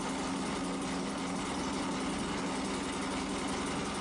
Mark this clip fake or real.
real